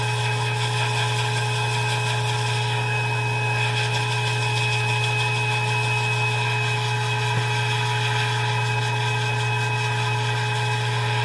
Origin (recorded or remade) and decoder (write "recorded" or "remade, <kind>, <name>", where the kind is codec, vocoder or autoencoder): recorded